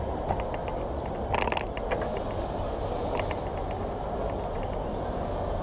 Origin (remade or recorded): recorded